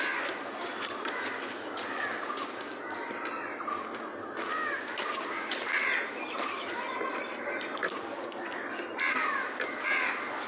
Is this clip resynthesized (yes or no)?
no